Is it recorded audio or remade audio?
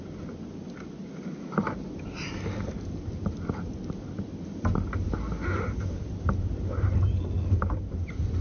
recorded